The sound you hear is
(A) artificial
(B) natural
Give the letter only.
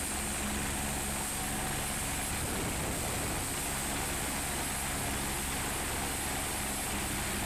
B